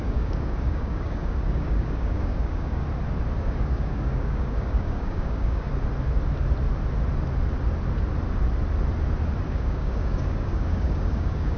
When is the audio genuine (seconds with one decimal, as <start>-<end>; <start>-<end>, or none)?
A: 2.8-3.4; 5.7-9.5